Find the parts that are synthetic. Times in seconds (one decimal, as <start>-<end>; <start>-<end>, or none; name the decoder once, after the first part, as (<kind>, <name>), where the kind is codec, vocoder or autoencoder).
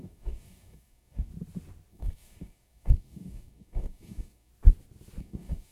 0.0-1.3 (codec, DAC); 1.9-4.5; 5.2-5.7